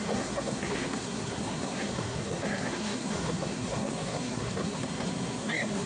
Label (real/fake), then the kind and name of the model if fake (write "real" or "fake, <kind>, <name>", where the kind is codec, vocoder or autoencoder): fake, codec, SNAC